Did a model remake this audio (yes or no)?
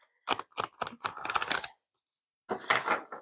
no